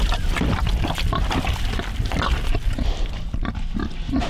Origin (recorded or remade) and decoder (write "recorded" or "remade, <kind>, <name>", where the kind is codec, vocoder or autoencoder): remade, vocoder, BigVGAN v2